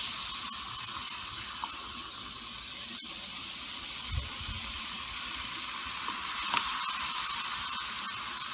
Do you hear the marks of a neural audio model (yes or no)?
no